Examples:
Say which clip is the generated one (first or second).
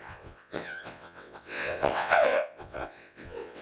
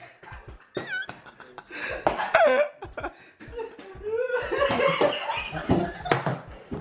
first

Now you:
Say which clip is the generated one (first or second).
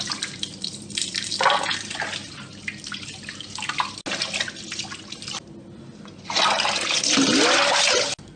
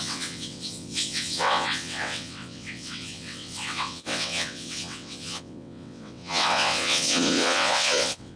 second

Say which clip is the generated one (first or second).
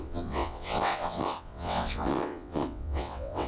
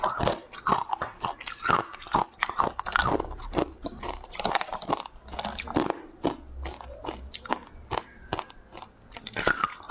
first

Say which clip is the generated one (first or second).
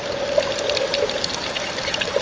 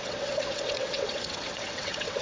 second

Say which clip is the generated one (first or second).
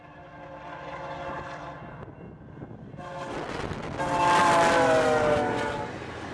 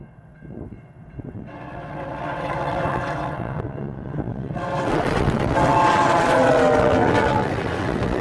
second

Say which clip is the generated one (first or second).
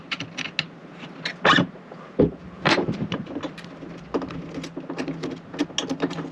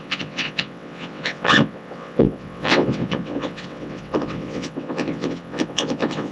second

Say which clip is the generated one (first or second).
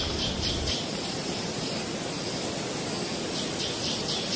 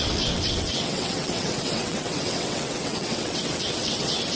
second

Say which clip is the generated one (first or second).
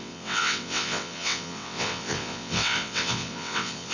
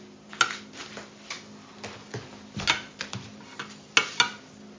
first